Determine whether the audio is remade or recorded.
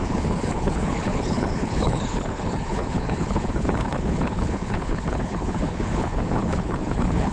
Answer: remade